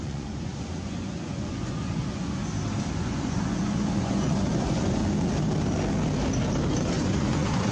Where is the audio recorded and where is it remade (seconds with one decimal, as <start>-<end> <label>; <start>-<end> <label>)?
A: 0.0-2.4 remade; 2.4-3.0 recorded; 3.0-5.0 remade; 5.0-6.7 recorded; 6.7-7.7 remade